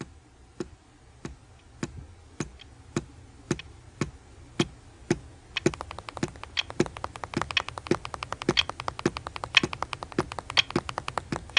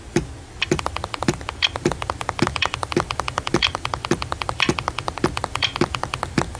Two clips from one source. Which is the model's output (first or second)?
second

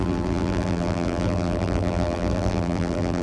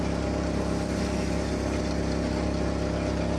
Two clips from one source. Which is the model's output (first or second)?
first